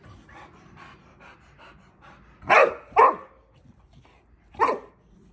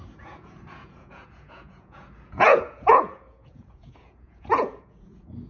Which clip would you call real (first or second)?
first